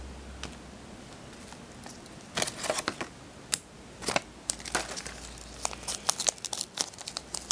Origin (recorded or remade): recorded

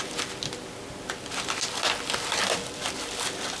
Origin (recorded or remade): recorded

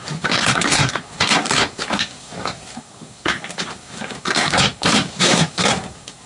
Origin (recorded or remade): remade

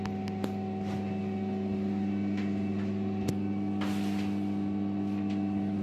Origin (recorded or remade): recorded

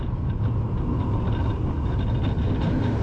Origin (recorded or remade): recorded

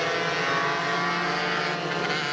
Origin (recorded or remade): recorded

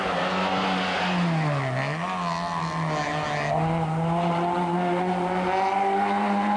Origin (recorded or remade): recorded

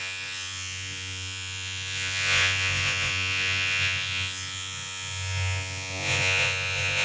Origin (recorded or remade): remade